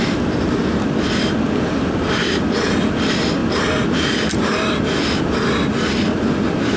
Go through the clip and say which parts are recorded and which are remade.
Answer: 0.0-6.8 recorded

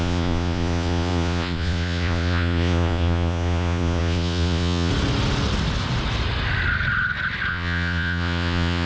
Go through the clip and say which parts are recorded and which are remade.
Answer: 0.0-4.9 remade; 4.9-7.5 recorded; 7.5-8.9 remade

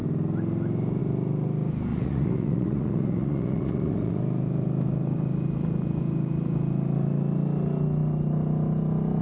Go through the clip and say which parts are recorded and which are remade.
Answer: 0.0-1.9 recorded; 1.9-4.2 remade; 4.2-9.2 recorded